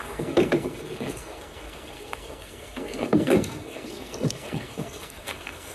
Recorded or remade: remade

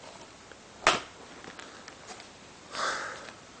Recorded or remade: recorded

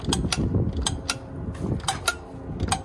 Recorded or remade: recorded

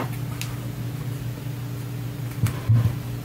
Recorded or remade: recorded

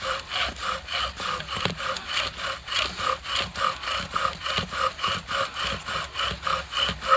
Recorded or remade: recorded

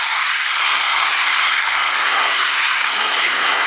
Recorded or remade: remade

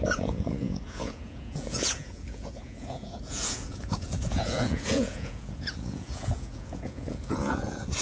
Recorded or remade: remade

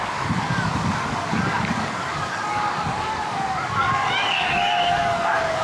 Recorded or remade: remade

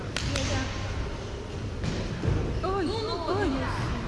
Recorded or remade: recorded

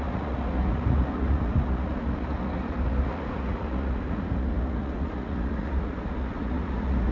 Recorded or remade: remade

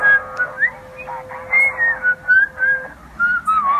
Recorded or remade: recorded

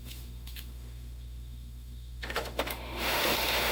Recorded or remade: remade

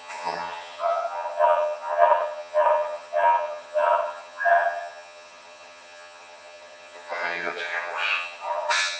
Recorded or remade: remade